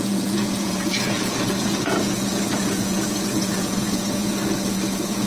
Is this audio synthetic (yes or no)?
yes